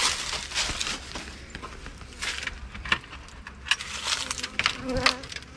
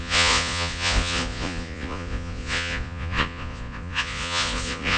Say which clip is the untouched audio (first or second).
first